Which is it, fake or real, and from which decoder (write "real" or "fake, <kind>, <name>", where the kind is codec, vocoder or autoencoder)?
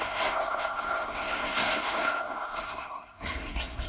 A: fake, codec, SNAC